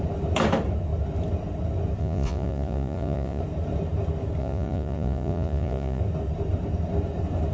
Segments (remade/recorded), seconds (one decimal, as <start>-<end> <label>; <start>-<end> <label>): 0.0-2.0 recorded; 2.0-3.4 remade; 3.4-4.4 recorded; 4.4-6.0 remade; 6.0-7.5 recorded